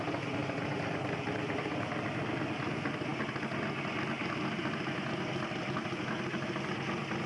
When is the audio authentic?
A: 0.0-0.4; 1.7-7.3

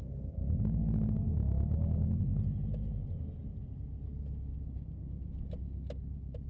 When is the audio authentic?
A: 0.0-6.5

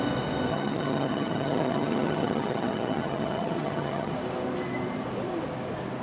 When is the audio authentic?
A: 0.0-0.5; 4.1-6.0

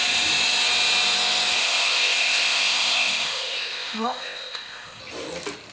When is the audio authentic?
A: 0.0-1.6; 5.0-5.7

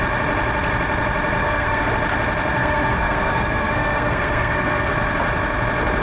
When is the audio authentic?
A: 0.0-1.4; 1.9-2.6; 4.9-6.0

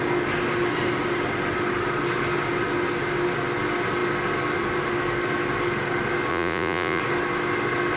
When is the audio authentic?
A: 0.0-6.3; 7.0-8.0

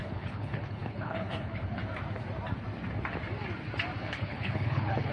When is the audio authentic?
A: 1.8-4.0

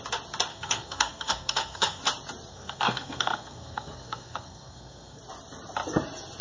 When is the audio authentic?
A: 0.0-0.5; 2.0-2.5; 5.2-6.4